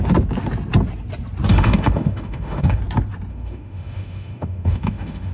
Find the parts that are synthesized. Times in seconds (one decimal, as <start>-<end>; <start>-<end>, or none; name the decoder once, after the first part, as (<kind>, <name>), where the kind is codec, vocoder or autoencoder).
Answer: 1.5-2.8 (autoencoder, DAC-VAE); 3.3-5.3